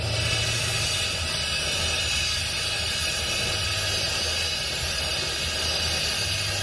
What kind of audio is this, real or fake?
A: real